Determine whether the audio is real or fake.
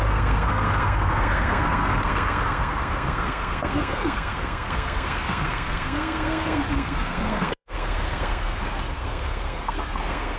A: fake